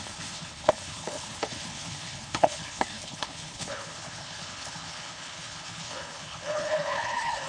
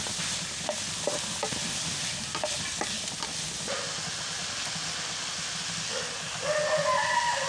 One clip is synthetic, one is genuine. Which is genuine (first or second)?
second